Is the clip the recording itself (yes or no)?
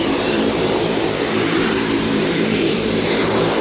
no